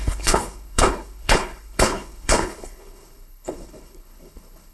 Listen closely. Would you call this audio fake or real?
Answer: fake